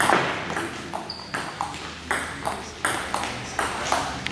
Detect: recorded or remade recorded